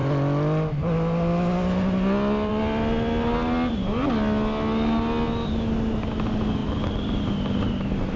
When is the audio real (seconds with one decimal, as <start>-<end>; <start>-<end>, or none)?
0.0-8.2